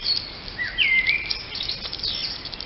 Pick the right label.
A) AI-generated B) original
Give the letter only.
B